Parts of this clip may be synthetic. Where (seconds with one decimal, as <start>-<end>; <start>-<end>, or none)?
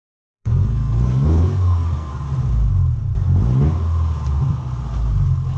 0.0-2.1